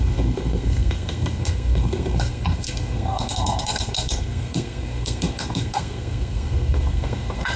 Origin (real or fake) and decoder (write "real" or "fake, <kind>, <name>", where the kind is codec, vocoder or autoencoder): fake, codec, SNAC